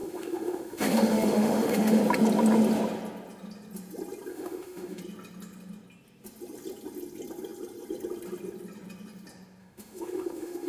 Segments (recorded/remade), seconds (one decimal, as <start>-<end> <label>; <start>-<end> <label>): 0.0-2.0 remade; 2.0-4.3 recorded; 4.3-5.0 remade; 5.0-9.6 recorded; 9.6-10.7 remade